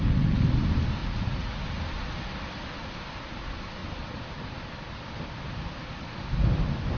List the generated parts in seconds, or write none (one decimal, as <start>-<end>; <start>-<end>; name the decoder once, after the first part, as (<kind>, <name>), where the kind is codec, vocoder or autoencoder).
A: 1.0-1.6 (vocoder, Vocos)